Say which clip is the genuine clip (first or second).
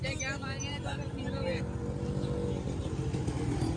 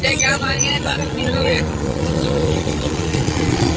first